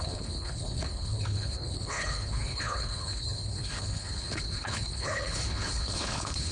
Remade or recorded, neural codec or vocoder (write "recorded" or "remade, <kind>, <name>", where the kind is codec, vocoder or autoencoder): remade, codec, HILCodec